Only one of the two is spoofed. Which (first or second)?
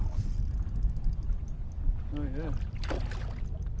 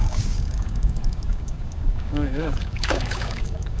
second